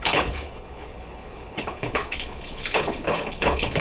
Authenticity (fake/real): fake